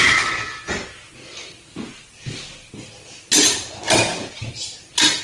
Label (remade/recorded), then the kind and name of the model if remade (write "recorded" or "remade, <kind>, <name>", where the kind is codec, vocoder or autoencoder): recorded